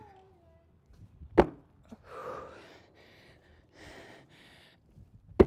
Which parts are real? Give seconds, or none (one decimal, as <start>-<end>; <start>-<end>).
0.0-5.5